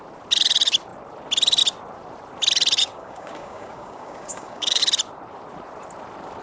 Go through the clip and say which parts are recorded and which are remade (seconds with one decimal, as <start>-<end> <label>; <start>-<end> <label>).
0.0-2.8 recorded; 2.8-4.8 remade; 4.8-6.4 recorded